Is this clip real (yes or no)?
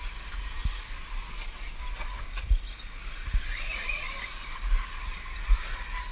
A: yes